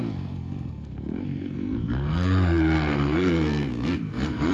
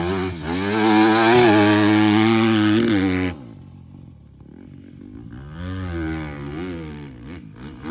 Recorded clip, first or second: second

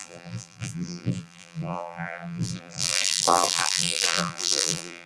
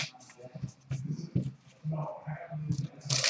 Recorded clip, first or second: second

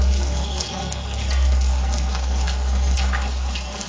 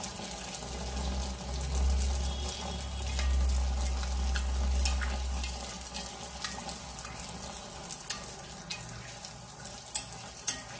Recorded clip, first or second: second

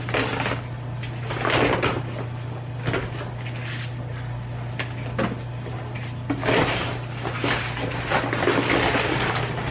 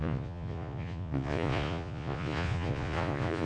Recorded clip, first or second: first